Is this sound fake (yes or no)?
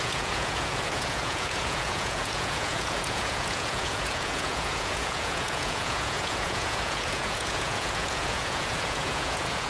yes